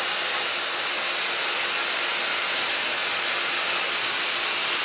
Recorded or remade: recorded